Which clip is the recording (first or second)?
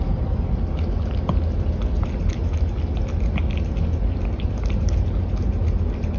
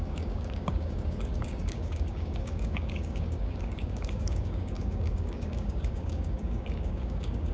first